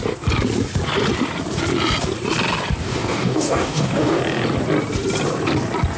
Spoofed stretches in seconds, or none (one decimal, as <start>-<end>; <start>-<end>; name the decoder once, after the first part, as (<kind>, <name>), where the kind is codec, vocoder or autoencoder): 2.8-4.2 (codec, DAC)